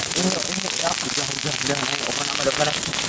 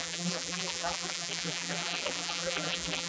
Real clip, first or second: first